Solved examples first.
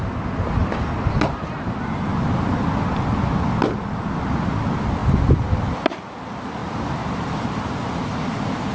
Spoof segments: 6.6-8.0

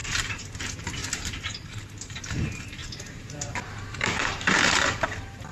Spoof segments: 0.0-0.6; 1.0-2.2; 2.8-5.5

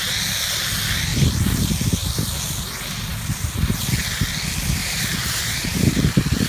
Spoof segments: 4.8-5.9

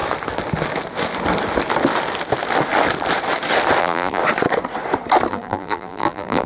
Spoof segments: 3.8-4.2; 5.3-6.5

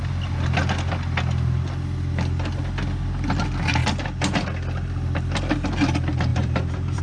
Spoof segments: 6.3-7.0

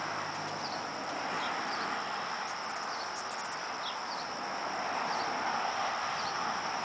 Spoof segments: none